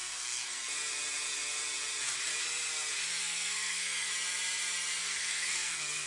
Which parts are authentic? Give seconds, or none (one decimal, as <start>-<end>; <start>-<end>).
0.6-3.2; 4.1-5.0